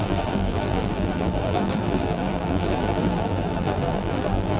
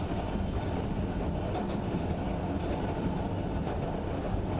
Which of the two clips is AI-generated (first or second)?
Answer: first